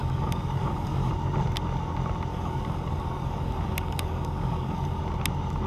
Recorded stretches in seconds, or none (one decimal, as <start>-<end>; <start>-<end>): 1.1-2.3; 5.0-5.7